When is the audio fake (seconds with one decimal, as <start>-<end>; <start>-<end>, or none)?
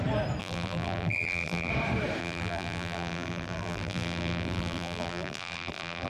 0.4-1.7; 2.2-6.1